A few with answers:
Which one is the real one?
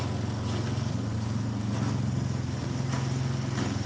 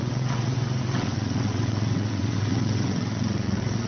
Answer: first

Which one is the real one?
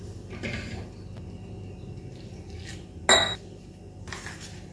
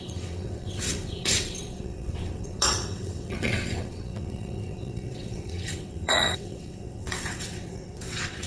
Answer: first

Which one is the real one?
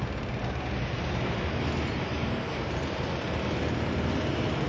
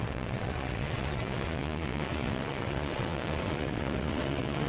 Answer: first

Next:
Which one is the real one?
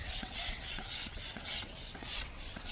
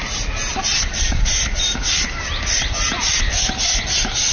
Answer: second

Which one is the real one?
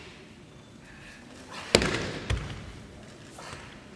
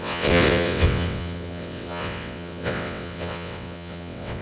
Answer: first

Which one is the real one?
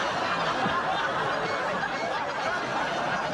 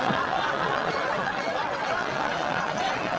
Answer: first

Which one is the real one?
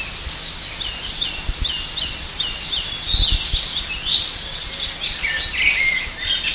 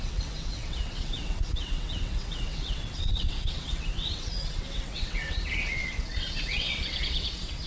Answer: first